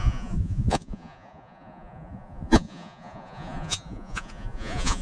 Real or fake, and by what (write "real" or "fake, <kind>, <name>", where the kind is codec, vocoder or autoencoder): fake, vocoder, Vocos